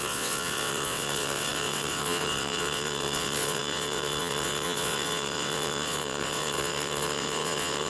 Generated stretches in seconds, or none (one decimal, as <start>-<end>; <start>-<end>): 0.0-7.9